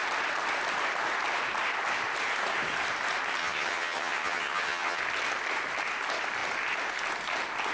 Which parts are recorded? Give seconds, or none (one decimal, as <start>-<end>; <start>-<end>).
0.0-3.4; 5.0-7.7